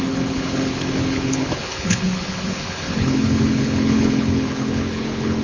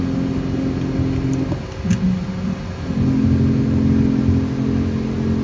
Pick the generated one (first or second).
first